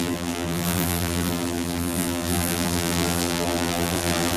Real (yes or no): no